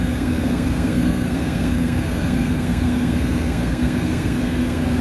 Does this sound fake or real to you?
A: fake